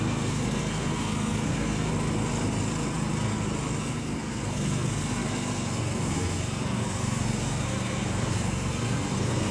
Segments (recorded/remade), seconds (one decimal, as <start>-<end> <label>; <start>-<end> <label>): 0.0-1.9 remade; 1.9-3.8 recorded; 3.8-9.5 remade

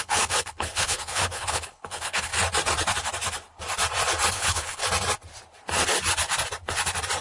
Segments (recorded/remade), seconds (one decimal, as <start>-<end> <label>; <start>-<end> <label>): 0.0-2.3 remade; 2.3-4.3 recorded; 4.3-4.8 remade; 4.8-7.2 recorded

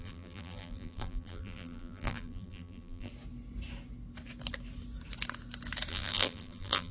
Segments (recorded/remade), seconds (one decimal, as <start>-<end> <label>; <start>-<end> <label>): 0.0-3.1 remade; 3.1-5.9 recorded; 5.9-6.9 remade

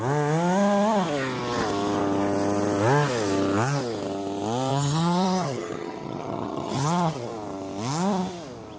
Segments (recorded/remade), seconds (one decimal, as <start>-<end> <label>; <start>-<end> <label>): 0.0-4.7 recorded; 4.7-7.3 remade; 7.3-8.8 recorded

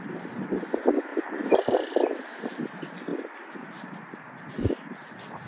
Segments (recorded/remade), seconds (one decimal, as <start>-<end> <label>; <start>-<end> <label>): 0.0-1.1 recorded; 1.1-2.4 remade; 2.4-5.5 recorded

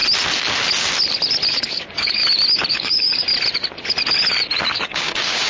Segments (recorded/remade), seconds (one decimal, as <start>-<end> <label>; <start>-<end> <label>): 0.0-1.5 recorded; 1.5-2.2 remade; 2.2-2.7 recorded; 2.7-3.3 remade; 3.3-4.7 recorded; 4.7-5.5 remade